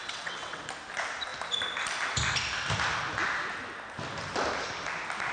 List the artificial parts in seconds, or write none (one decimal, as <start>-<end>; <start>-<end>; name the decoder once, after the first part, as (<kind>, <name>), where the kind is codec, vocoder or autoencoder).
0.0-0.6 (vocoder, WaveNeXt)